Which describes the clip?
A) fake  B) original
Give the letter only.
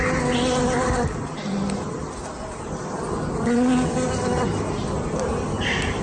B